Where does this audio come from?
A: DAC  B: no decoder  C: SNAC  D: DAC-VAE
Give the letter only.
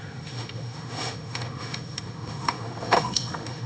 D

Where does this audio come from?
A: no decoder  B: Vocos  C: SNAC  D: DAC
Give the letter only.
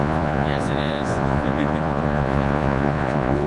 B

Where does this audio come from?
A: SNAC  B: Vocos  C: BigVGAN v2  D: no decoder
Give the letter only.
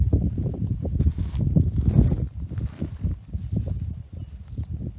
D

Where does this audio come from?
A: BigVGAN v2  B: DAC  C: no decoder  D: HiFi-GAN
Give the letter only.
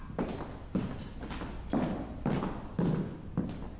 C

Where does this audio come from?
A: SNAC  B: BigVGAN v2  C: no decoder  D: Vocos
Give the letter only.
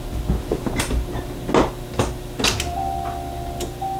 C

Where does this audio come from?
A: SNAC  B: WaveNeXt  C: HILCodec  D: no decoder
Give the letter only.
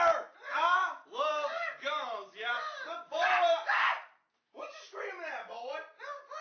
D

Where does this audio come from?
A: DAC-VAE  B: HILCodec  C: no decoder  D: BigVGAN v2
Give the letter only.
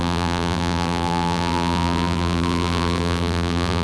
D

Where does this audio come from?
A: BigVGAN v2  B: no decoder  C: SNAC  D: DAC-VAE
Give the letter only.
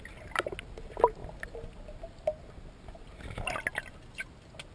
B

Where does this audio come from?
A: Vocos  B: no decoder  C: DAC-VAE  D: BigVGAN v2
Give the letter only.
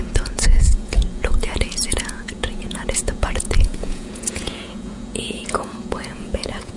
A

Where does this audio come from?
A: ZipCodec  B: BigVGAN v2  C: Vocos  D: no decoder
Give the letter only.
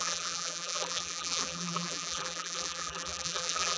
B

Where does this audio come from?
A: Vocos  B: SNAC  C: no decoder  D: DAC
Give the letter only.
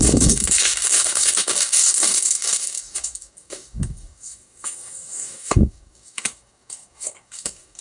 D